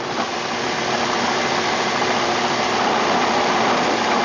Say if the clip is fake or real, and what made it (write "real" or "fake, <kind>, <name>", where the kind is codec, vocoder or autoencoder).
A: real